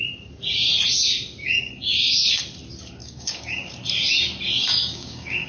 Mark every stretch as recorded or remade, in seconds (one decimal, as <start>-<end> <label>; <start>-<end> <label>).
0.0-1.4 recorded; 1.4-2.4 remade; 2.4-3.0 recorded; 3.0-3.7 remade; 3.7-4.6 recorded; 4.6-5.5 remade